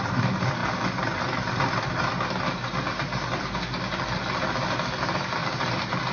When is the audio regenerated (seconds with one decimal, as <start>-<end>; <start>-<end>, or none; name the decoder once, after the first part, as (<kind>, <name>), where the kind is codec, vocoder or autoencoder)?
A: none